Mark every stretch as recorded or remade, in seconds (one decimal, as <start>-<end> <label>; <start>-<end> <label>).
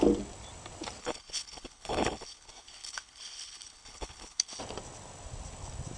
0.0-1.0 recorded; 1.0-4.6 remade; 4.6-6.0 recorded